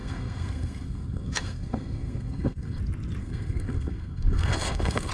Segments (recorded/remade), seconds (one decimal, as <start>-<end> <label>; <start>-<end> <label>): 0.0-2.8 remade; 2.8-3.2 recorded; 3.2-5.1 remade